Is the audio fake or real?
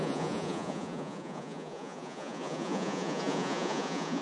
fake